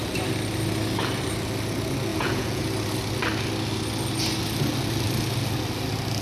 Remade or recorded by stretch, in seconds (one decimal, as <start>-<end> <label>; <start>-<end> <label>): 0.0-2.1 recorded; 2.1-2.6 remade; 2.6-6.2 recorded